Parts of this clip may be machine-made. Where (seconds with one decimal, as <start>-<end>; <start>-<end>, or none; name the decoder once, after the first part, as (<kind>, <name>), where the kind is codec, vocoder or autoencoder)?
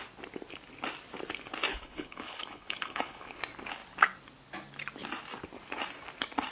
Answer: 1.7-3.4 (codec, HILCodec)